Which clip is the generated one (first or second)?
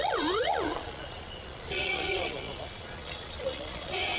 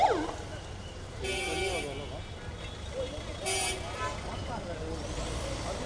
first